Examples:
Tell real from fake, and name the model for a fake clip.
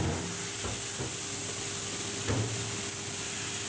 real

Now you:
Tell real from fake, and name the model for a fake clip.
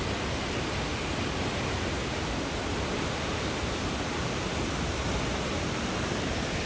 real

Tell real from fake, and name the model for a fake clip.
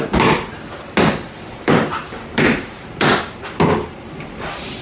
real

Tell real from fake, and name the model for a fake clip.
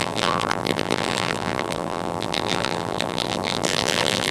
fake, vocoder, BigVGAN v2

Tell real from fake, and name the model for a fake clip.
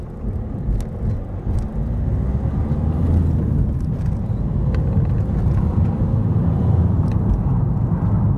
real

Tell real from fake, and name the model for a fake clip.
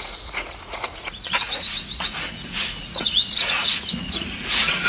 fake, vocoder, Vocos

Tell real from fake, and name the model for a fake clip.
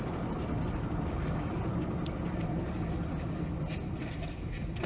real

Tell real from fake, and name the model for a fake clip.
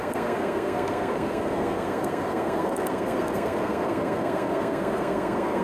fake, codec, SNAC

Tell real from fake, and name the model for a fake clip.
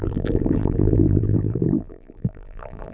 fake, vocoder, BigVGAN v2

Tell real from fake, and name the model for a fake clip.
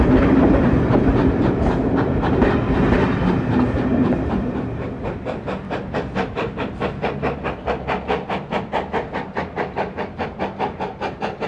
fake, vocoder, BigVGAN v2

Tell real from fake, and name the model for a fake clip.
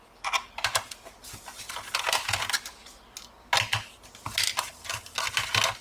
real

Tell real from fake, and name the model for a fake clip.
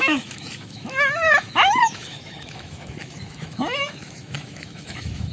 fake, autoencoder, DAC-VAE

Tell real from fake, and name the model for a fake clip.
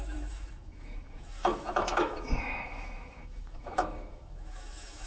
fake, autoencoder, DAC-VAE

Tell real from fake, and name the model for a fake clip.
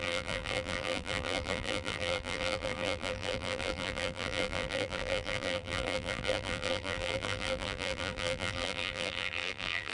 fake, vocoder, BigVGAN v2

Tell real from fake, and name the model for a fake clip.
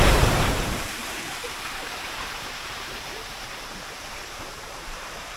fake, vocoder, BigVGAN v2